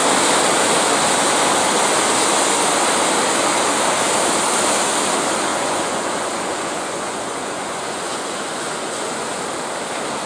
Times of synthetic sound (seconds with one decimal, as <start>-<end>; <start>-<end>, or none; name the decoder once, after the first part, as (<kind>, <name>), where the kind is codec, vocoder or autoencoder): 5.5-9.4 (vocoder, Vocos)

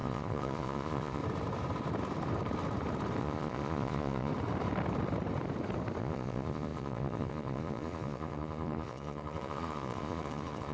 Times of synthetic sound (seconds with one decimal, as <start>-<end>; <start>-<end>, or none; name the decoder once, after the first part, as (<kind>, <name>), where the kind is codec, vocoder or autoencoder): 0.0-1.2 (vocoder, Vocos); 3.2-4.3; 6.0-10.7

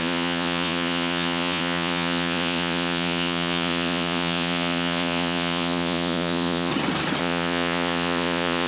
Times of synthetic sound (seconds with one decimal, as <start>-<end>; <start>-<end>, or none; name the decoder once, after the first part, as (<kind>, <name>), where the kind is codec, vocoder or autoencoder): 0.0-6.7 (vocoder, Vocos); 7.2-8.7